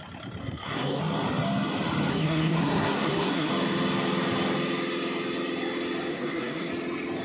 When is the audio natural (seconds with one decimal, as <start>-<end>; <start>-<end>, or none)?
0.0-0.4; 1.0-2.1; 3.5-6.1; 6.7-7.2